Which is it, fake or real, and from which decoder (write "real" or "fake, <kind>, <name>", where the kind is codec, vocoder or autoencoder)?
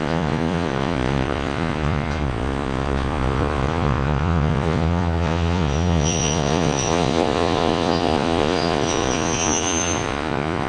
fake, vocoder, Vocos